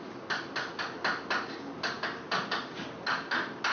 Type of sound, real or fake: real